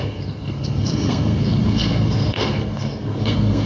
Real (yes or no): no